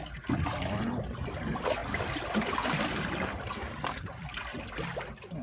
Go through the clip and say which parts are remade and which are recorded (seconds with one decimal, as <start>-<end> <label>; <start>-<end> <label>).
0.0-1.8 recorded; 1.8-4.1 remade; 4.1-5.4 recorded